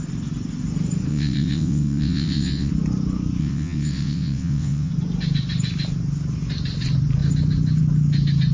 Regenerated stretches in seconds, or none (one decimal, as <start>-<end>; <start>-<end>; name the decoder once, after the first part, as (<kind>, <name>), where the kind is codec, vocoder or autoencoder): 1.1-2.7 (vocoder, WaveNeXt); 3.4-4.9